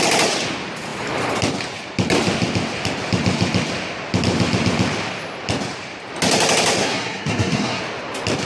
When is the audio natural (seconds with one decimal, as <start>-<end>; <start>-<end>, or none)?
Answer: 0.0-6.8; 7.8-8.5